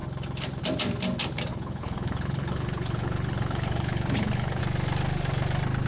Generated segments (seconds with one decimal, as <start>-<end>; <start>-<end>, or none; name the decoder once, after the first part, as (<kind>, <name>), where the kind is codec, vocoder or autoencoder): 1.5-4.6 (codec, HILCodec)